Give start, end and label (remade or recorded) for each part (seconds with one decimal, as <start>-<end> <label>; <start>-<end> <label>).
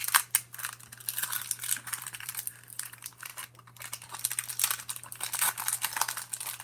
0.0-2.0 recorded; 2.0-3.3 remade; 3.3-6.6 recorded